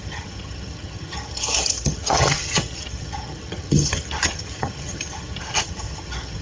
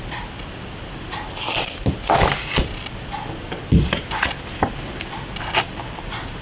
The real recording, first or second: second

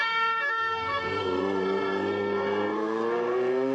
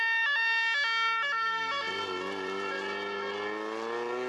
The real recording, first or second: second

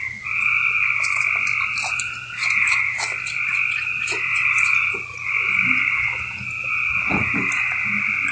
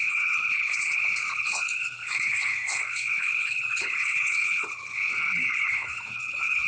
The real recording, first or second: first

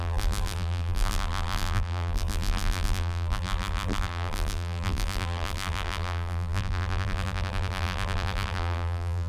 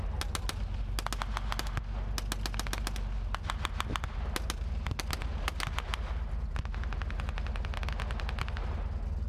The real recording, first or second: second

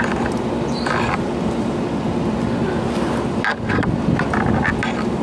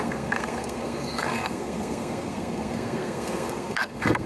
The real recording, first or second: first